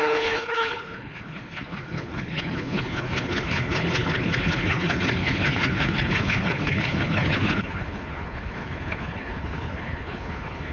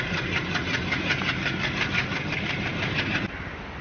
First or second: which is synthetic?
first